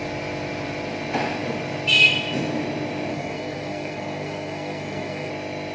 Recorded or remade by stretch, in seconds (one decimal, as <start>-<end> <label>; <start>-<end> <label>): 0.0-3.1 recorded; 3.1-5.3 remade; 5.3-5.7 recorded